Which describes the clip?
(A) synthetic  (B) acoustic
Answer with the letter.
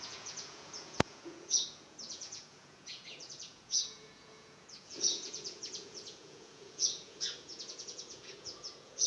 A